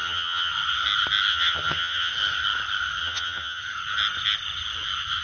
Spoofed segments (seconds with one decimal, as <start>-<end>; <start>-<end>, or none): 0.0-0.5; 1.3-2.1; 3.0-3.6